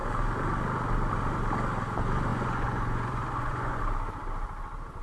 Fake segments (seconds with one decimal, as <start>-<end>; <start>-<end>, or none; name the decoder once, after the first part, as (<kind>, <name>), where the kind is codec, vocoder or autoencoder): 2.3-3.8 (vocoder, Vocos)